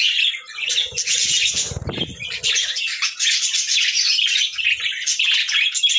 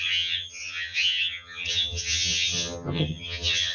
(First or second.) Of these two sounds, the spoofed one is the second